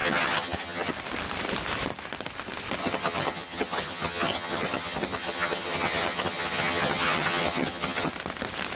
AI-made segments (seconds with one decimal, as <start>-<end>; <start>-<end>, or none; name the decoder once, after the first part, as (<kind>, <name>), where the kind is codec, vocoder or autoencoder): 0.0-0.9 (vocoder, HiFi-GAN); 2.8-8.1